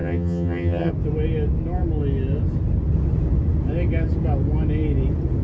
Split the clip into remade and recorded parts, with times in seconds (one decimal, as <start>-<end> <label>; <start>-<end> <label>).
0.0-0.9 remade; 0.9-5.4 recorded